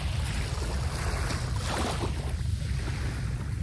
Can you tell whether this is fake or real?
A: real